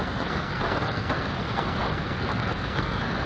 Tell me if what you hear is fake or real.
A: fake